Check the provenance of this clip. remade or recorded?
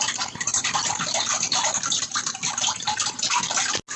recorded